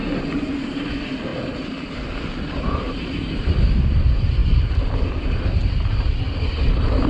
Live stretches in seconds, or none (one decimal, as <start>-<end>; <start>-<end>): 0.0-7.1